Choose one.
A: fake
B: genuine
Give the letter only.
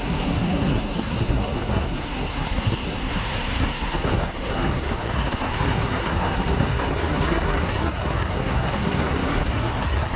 A